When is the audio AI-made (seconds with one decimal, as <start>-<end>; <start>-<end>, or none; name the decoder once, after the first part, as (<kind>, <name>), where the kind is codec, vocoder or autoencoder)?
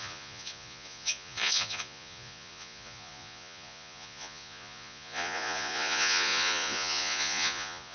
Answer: 0.0-7.9 (vocoder, Vocos)